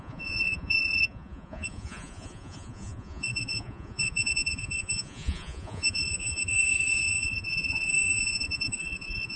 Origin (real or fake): fake